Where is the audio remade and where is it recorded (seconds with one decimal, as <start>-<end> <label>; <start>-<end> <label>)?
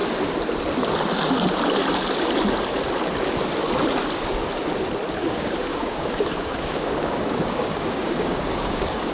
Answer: 0.0-5.2 recorded; 5.2-9.1 remade